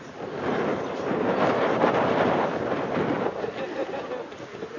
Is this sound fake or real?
real